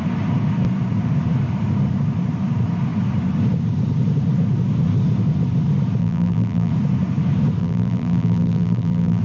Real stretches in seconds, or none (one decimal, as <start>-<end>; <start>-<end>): 0.0-6.0; 6.7-7.6